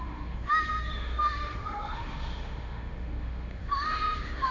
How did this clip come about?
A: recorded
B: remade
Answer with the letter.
B